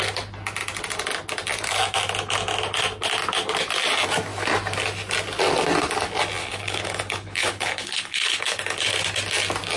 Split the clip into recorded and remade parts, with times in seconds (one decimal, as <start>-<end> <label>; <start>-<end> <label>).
0.0-6.4 recorded; 6.4-8.9 remade; 8.9-9.8 recorded

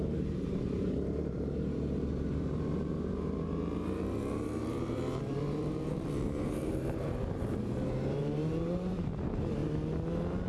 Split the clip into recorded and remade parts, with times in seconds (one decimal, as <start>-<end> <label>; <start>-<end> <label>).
0.0-9.6 remade; 9.6-10.5 recorded

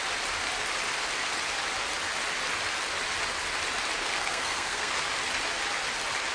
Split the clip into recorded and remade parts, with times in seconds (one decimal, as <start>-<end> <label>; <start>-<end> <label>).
0.0-4.0 recorded; 4.0-4.9 remade; 4.9-6.3 recorded

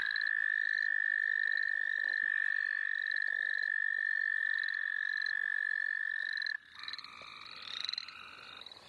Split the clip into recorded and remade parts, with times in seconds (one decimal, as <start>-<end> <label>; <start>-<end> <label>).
0.0-8.9 recorded

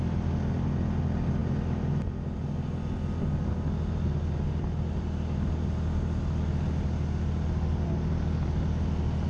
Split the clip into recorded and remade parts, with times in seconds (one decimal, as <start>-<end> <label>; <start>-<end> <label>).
0.0-9.3 recorded

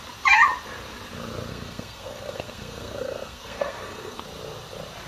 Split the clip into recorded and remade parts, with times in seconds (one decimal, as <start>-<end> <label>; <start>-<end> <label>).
0.0-1.5 recorded; 1.5-4.2 remade; 4.2-5.1 recorded